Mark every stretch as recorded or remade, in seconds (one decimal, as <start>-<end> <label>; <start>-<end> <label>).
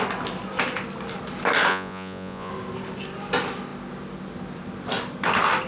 0.0-1.7 recorded; 1.7-2.5 remade; 2.5-5.7 recorded